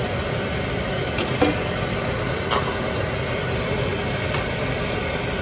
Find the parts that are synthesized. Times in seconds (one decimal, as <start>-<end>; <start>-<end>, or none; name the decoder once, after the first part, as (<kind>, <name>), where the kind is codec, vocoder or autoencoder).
none